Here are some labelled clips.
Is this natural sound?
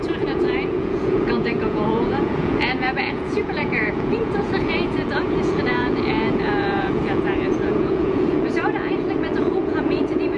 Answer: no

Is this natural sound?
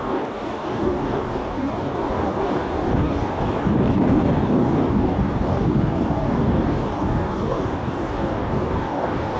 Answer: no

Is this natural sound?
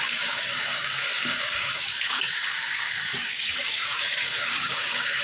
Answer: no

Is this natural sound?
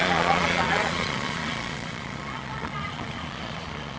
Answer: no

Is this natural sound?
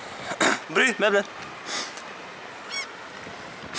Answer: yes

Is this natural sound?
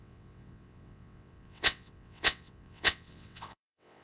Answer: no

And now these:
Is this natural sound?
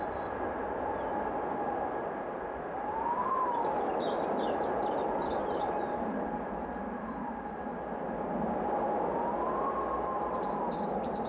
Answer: yes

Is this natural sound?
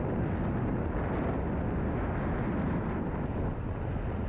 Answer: yes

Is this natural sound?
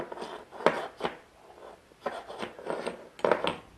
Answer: yes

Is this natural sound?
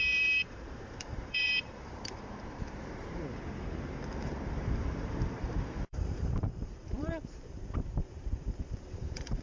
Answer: no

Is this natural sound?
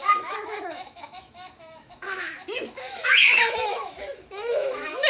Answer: no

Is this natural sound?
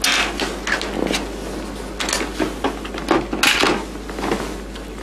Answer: yes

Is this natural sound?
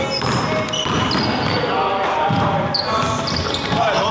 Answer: yes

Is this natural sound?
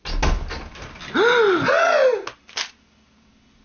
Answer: yes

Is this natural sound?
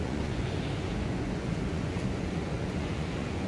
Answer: no